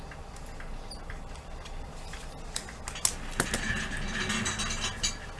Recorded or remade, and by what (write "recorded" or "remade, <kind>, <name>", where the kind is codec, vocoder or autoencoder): recorded